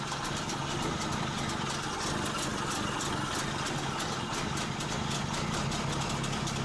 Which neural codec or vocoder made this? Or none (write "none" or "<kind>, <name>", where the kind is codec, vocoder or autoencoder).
none